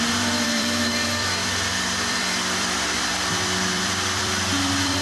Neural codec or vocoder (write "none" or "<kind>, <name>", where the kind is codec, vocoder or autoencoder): vocoder, BigVGAN v2